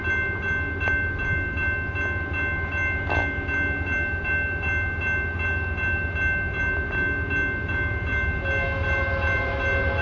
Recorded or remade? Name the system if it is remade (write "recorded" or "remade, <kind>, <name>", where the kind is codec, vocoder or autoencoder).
recorded